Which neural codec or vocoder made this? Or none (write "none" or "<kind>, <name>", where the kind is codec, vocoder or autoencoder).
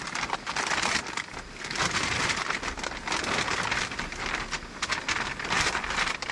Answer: none